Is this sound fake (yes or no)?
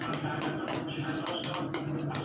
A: no